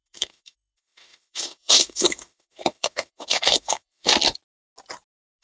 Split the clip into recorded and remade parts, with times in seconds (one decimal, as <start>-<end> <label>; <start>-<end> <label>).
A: 0.0-4.1 remade; 4.1-5.4 recorded